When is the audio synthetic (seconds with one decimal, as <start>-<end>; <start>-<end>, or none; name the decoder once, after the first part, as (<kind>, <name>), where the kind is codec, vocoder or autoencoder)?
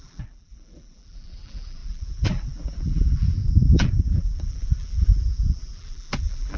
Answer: 0.0-6.6 (vocoder, BigVGAN v2)